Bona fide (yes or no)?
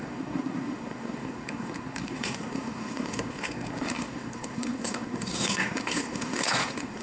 no